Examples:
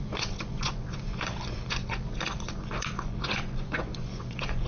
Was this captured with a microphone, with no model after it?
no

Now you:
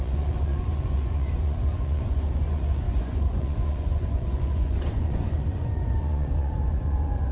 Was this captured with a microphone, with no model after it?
no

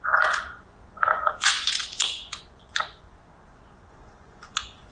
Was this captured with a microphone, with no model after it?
no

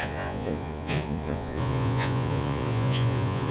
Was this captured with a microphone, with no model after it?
no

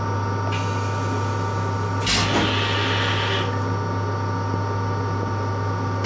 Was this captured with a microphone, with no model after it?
yes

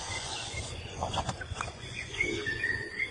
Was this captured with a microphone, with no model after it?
no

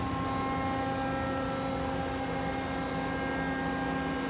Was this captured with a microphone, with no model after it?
yes